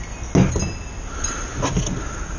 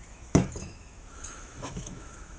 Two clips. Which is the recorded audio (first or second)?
first